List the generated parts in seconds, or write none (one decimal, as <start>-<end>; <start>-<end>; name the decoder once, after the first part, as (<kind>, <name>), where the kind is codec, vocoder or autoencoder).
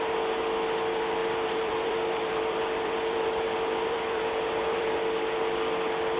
1.2-4.9 (vocoder, BigVGAN v2)